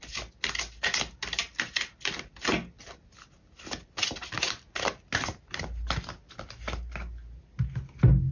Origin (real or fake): real